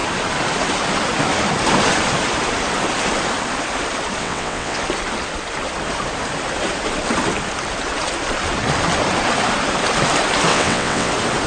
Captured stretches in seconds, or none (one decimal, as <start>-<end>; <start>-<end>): 0.0-4.2; 4.8-10.5; 11.1-11.5